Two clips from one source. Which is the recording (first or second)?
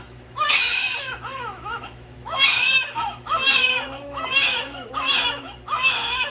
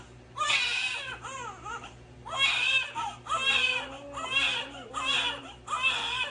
second